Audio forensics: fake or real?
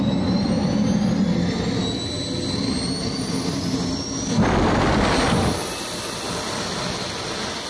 real